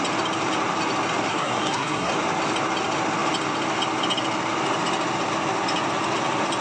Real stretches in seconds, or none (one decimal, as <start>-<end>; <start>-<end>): 0.0-1.3; 2.1-6.6